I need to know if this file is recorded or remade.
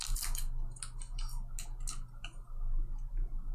recorded